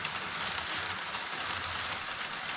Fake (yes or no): no